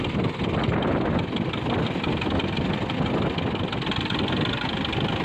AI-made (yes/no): no